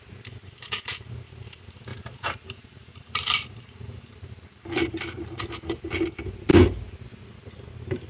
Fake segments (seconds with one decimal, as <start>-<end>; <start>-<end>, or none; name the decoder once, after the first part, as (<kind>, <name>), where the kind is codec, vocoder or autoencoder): 1.9-5.4 (vocoder, BigVGAN v2)